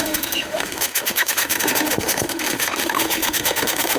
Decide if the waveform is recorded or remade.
remade